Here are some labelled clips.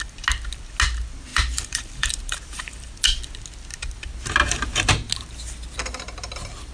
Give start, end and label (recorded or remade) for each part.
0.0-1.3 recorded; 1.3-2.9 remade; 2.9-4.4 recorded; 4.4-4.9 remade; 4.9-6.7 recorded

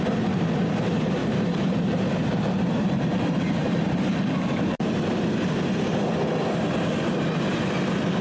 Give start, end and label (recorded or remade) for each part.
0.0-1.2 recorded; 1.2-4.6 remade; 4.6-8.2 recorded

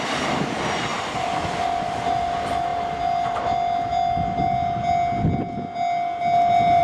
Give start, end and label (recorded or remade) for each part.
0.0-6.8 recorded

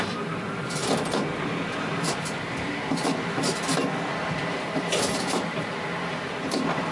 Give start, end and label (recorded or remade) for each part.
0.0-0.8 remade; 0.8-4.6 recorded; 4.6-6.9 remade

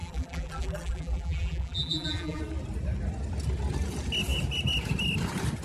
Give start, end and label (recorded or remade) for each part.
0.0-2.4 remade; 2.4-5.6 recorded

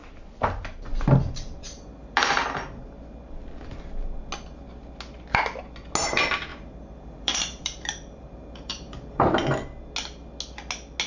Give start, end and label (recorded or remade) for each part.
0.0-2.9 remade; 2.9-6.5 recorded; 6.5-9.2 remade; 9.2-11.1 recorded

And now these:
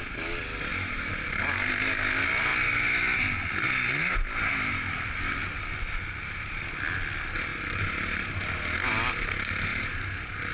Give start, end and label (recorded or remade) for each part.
0.0-0.7 recorded; 0.7-1.4 remade; 1.4-7.5 recorded; 7.5-8.4 remade; 8.4-9.7 recorded; 9.7-10.5 remade

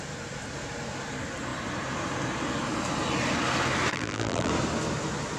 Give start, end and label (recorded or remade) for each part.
0.0-3.9 recorded; 3.9-4.5 remade; 4.5-5.4 recorded